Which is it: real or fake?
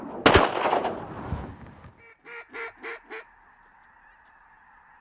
real